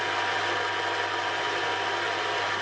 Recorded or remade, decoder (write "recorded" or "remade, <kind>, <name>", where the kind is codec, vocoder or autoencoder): recorded